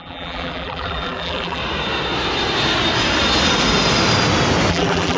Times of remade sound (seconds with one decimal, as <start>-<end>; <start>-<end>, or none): 0.0-1.6; 4.7-5.2

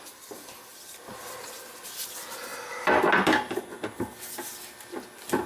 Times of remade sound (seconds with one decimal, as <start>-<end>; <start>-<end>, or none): none

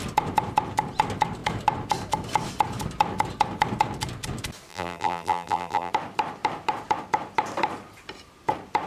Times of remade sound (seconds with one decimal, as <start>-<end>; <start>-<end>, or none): 4.7-5.9